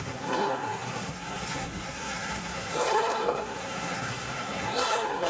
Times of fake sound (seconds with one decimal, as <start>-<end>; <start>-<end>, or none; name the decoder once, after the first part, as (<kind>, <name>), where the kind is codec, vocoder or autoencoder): 0.0-5.3 (codec, SNAC)

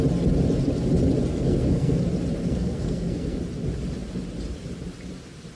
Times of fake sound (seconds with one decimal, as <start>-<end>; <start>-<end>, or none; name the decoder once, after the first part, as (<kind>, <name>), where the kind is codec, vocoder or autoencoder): 1.3-2.0 (codec, SNAC); 2.4-3.4

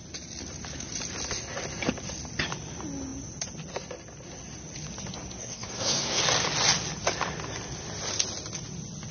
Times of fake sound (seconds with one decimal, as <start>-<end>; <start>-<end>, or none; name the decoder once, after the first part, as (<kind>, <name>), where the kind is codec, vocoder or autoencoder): 5.4-6.2 (codec, SNAC)

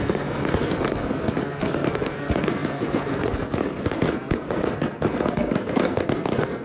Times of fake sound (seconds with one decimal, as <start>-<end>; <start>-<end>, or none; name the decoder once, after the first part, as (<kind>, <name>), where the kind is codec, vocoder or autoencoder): 0.0-6.6 (codec, SNAC)

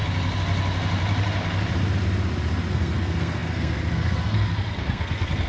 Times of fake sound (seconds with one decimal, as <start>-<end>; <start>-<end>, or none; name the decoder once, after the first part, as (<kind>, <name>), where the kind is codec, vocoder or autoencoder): 2.7-5.5 (codec, SNAC)

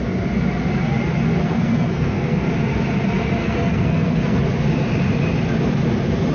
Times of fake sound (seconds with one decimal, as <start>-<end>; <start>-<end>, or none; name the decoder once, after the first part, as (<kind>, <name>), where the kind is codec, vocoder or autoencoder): 1.4-2.4 (codec, SNAC); 3.4-4.4

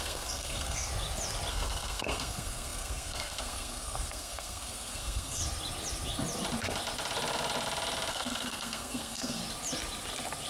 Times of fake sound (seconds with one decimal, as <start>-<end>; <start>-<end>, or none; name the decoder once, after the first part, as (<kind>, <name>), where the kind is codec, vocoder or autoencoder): 0.0-0.9 (codec, SNAC); 1.5-5.4; 8.1-9.4